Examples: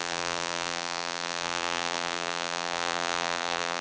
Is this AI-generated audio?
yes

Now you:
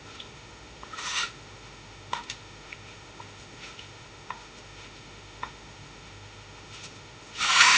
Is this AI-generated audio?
yes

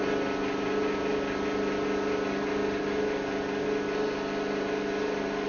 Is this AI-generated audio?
no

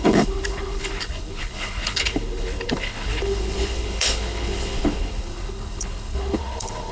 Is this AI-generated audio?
yes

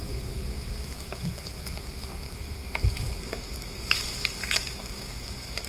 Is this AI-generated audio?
yes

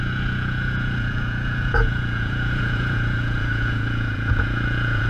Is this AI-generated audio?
yes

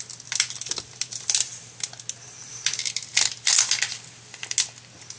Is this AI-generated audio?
no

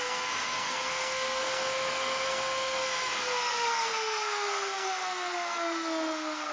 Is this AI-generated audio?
yes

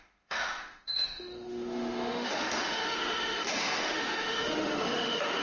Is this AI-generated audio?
yes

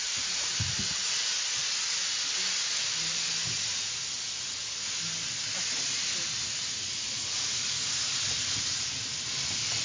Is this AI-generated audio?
no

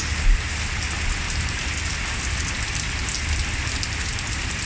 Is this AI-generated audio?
no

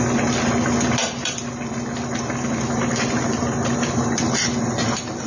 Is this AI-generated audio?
no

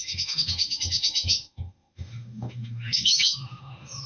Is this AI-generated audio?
yes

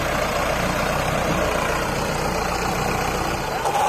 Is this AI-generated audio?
yes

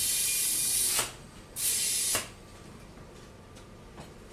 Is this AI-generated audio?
no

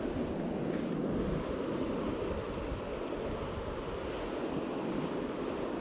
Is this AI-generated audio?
no